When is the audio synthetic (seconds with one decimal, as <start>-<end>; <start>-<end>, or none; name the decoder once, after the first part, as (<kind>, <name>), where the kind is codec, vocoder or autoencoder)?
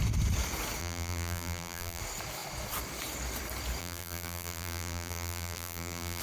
0.8-2.0 (vocoder, BigVGAN v2); 3.8-6.2